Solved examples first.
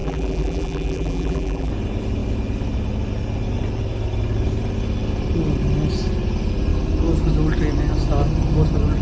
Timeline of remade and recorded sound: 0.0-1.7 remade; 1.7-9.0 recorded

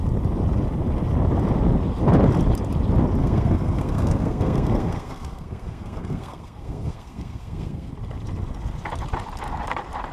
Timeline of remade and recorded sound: 0.0-3.2 recorded; 3.2-7.9 remade; 7.9-10.1 recorded

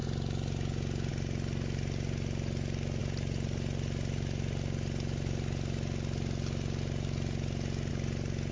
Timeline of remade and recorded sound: 0.0-8.5 recorded

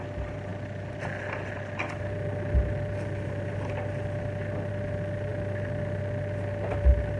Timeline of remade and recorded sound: 0.0-7.2 recorded